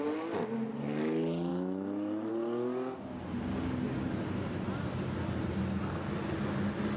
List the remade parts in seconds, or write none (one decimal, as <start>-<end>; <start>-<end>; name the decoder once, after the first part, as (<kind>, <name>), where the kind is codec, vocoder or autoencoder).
1.5-2.3 (autoencoder, DAC-VAE)